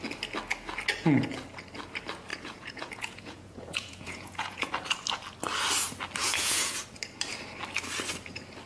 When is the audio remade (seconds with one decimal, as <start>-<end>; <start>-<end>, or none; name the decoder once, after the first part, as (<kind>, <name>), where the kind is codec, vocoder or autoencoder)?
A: 2.3-4.7 (vocoder, Vocos); 6.2-6.8